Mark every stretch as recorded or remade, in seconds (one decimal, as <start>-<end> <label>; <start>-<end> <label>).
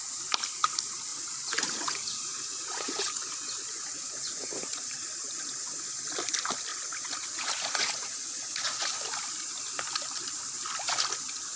0.0-1.1 recorded; 1.1-5.8 remade; 5.8-6.7 recorded; 6.7-8.9 remade; 8.9-11.6 recorded